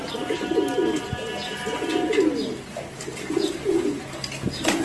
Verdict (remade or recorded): recorded